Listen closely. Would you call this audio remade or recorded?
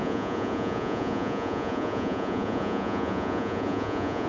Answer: remade